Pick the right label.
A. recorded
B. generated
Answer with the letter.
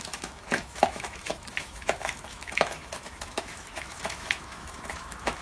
B